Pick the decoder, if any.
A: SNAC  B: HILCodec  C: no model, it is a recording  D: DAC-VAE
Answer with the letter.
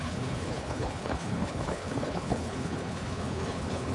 B